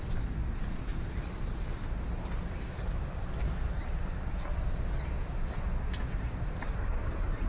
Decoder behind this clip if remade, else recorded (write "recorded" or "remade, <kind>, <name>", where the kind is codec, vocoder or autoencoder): recorded